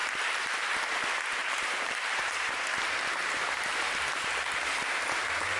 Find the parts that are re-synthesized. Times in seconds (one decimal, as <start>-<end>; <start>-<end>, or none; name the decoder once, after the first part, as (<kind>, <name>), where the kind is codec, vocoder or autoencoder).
1.4-4.8 (vocoder, BigVGAN v2)